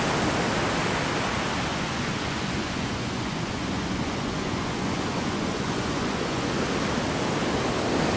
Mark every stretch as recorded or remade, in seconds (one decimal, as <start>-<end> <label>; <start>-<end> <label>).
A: 0.0-1.7 recorded; 1.7-6.5 remade; 6.5-8.2 recorded